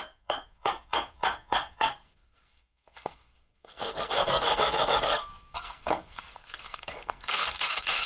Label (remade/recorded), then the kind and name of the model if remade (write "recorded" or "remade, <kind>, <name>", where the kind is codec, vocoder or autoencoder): remade, codec, SNAC